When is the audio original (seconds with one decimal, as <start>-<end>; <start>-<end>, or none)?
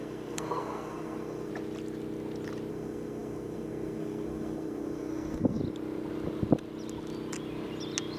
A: 1.5-2.7; 5.6-8.2